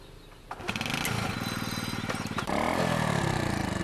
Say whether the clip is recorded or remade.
recorded